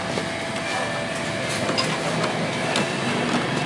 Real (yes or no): yes